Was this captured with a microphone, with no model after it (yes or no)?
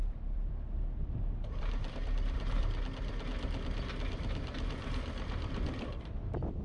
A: no